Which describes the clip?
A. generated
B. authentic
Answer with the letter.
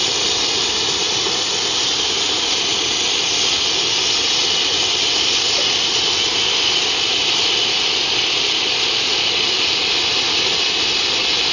B